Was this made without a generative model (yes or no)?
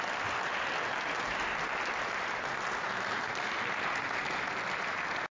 yes